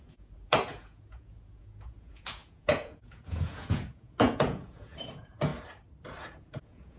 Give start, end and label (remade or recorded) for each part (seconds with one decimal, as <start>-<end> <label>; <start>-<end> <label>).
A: 0.0-5.5 remade; 5.5-6.2 recorded; 6.2-7.0 remade

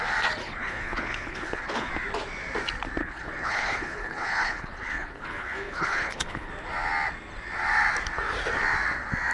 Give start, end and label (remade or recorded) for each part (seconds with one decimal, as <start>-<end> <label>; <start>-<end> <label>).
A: 0.0-0.4 recorded; 0.4-1.9 remade; 1.9-3.0 recorded; 3.0-6.5 remade; 6.5-9.3 recorded

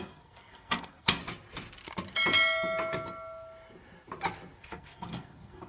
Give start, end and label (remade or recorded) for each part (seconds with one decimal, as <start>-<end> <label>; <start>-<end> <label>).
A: 0.0-1.2 remade; 1.2-4.6 recorded; 4.6-5.7 remade

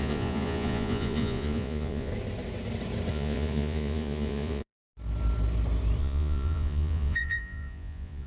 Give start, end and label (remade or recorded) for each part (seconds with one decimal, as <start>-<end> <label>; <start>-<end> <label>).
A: 0.0-2.1 remade; 2.1-3.1 recorded; 3.1-4.8 remade; 4.8-6.0 recorded; 6.0-8.3 remade

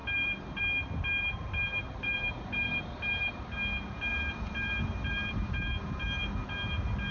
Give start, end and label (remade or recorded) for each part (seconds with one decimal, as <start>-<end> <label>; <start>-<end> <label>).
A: 0.0-0.6 remade; 0.6-4.1 recorded; 4.1-5.7 remade; 5.7-7.1 recorded

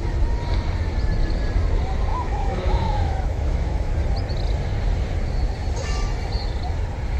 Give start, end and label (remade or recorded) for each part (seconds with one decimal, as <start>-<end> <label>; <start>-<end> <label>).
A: 0.0-2.1 recorded; 2.1-3.9 remade; 3.9-7.2 recorded

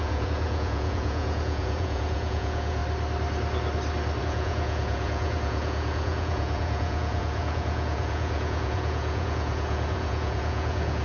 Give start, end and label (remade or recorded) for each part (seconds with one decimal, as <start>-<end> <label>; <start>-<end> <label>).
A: 0.0-2.8 remade; 2.8-4.2 recorded; 4.2-11.0 remade

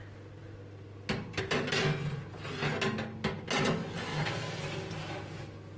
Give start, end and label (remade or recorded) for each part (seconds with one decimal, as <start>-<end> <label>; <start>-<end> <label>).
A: 0.0-4.1 recorded; 4.1-4.6 remade; 4.6-5.8 recorded